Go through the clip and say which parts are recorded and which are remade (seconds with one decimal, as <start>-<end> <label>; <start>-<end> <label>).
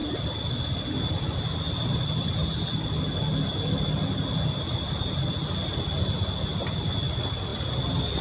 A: 0.0-8.2 recorded